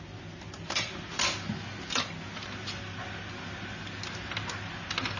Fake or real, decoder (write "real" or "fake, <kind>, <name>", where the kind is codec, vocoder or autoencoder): real